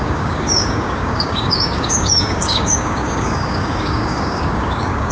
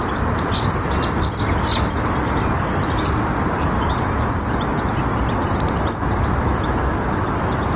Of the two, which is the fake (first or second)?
first